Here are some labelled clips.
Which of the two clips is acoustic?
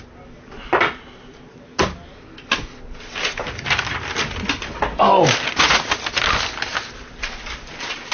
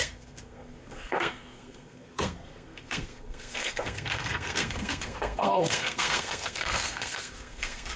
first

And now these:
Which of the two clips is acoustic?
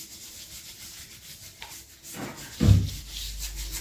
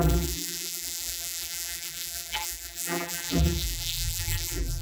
first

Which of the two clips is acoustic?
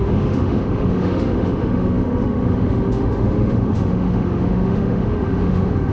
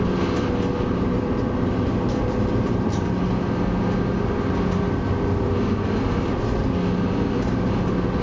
second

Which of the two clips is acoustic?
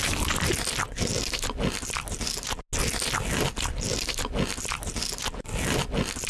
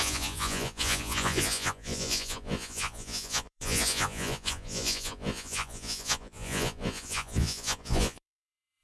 first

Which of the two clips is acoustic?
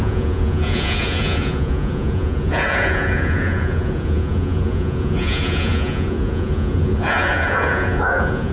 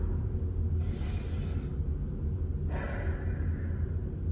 second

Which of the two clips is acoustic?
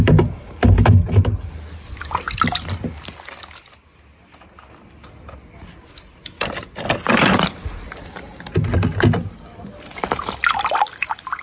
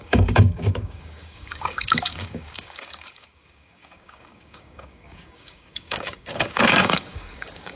first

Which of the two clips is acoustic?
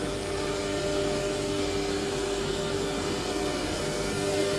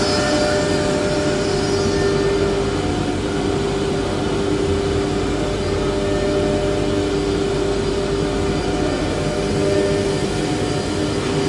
second